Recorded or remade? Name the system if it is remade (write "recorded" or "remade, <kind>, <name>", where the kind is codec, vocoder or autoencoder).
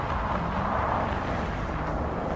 recorded